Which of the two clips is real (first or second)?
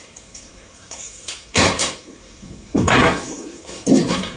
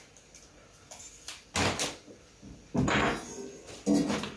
second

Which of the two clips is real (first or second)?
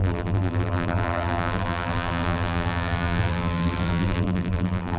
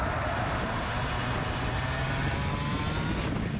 second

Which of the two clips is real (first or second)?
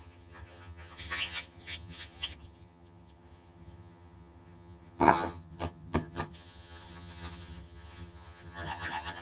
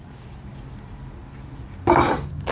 second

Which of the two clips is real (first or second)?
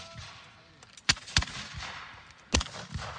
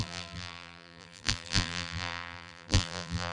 first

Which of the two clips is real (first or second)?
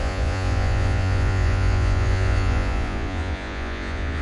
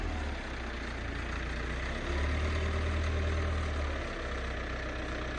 second